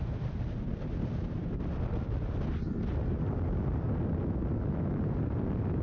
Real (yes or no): yes